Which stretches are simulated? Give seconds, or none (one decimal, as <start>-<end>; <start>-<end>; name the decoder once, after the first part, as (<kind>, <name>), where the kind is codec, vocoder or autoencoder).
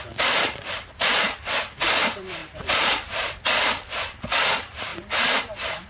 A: 0.0-1.6 (vocoder, BigVGAN v2); 2.4-3.4; 4.9-5.4